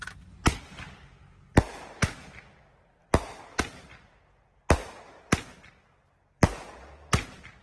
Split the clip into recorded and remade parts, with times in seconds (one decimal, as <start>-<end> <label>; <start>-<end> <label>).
0.0-7.6 recorded